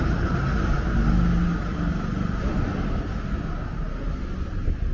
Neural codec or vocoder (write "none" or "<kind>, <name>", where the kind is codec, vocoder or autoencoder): none